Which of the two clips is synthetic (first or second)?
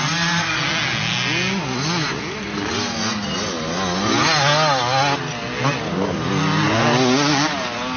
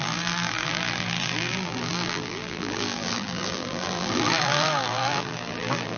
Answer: second